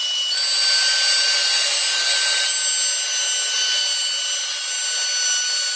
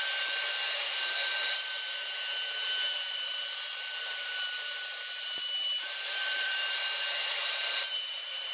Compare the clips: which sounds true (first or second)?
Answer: first